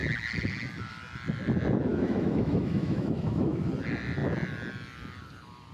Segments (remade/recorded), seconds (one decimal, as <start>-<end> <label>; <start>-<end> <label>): 0.0-1.9 recorded; 1.9-3.6 remade; 3.6-5.7 recorded